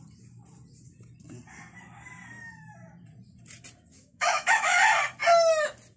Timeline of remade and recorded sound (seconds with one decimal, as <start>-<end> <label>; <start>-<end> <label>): 0.0-3.9 recorded; 3.9-4.8 remade; 4.8-6.0 recorded